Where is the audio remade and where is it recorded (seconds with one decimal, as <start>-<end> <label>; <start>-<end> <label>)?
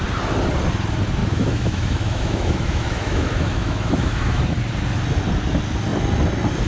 0.0-1.2 recorded; 1.2-4.4 remade; 4.4-6.7 recorded